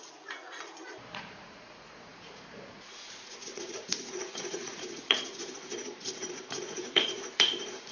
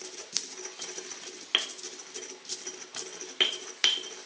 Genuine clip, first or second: second